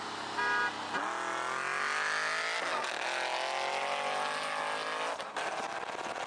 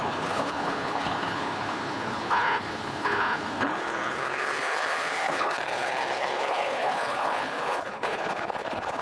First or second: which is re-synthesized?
second